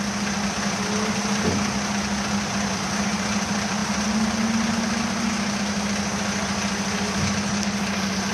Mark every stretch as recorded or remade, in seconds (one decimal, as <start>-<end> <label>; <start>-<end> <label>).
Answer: 0.0-8.3 recorded